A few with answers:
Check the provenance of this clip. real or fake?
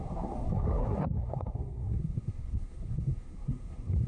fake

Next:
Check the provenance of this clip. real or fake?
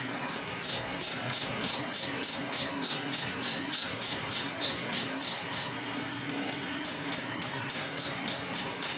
fake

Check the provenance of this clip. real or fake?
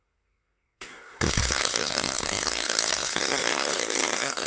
fake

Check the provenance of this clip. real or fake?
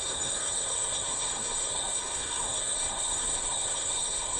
fake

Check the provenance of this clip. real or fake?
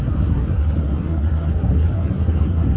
fake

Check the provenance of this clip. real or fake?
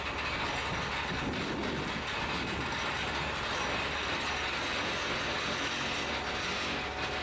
real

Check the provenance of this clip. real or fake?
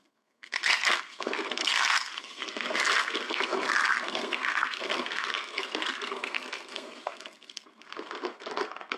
fake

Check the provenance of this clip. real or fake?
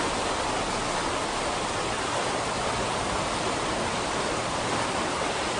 real